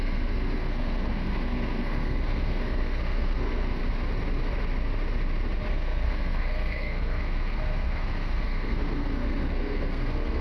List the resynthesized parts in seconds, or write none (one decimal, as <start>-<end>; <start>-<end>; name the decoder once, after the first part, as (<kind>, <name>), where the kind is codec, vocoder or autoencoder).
0.0-3.8 (codec, SNAC); 5.7-10.4